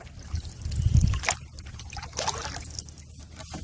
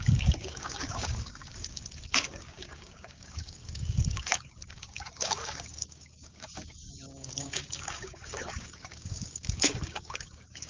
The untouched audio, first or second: first